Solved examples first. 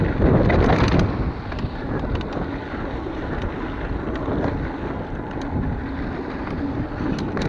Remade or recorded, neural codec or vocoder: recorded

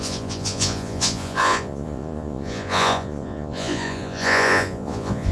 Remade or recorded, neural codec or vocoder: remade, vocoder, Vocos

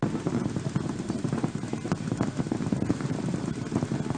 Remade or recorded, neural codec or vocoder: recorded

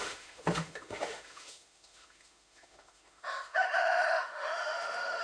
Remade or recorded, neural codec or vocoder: remade, autoencoder, DAC-VAE